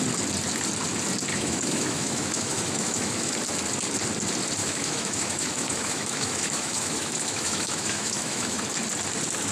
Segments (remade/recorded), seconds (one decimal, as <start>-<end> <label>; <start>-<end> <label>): 0.0-1.3 recorded; 1.3-3.3 remade; 3.3-4.6 recorded; 4.6-8.6 remade; 8.6-9.5 recorded